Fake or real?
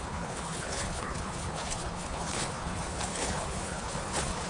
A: fake